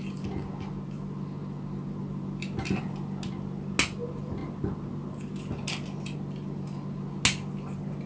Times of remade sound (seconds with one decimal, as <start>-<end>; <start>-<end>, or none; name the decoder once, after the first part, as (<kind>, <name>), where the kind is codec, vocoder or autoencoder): none